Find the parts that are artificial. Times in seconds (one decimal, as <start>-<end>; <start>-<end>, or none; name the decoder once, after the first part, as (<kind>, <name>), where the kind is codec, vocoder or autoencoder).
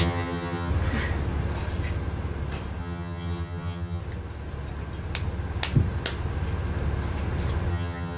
0.0-0.7 (vocoder, HiFi-GAN); 2.8-4.0; 7.7-8.2